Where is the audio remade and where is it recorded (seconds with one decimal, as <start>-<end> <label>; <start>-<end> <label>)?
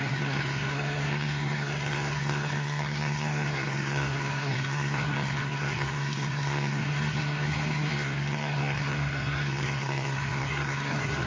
0.0-11.3 remade